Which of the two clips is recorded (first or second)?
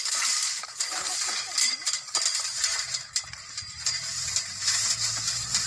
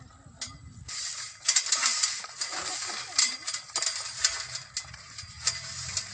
second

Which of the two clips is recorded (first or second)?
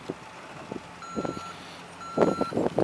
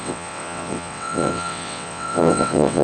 first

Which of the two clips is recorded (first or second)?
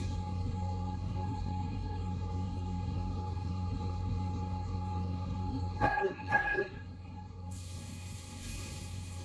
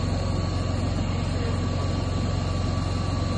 second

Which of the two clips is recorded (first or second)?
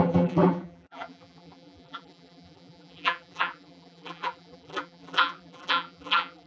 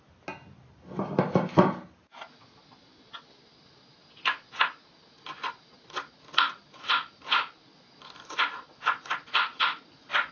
second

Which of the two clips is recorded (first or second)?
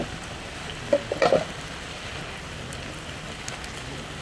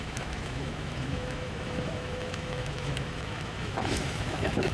first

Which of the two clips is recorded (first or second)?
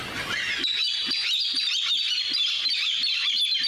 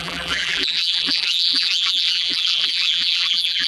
first